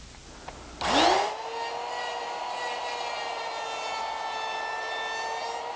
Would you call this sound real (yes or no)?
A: yes